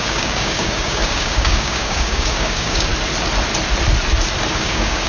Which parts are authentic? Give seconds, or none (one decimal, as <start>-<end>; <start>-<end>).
2.9-4.5